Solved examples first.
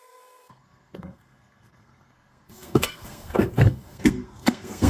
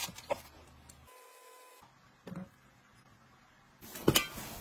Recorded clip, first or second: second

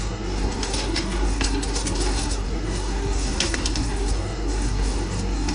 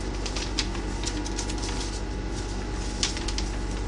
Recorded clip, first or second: second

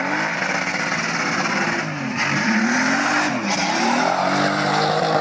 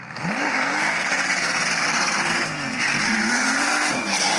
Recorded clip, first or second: first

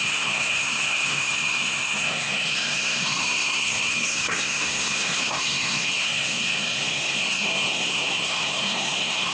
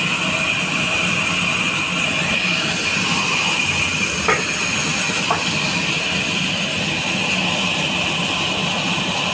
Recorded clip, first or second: second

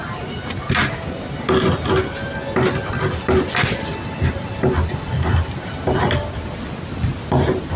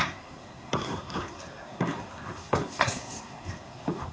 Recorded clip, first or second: first